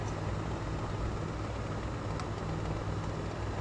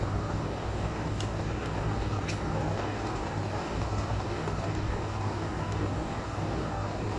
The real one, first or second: first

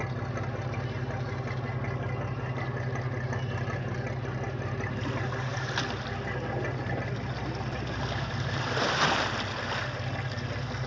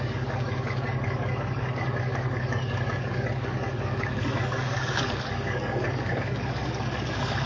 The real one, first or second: first